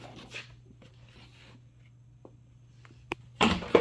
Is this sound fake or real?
real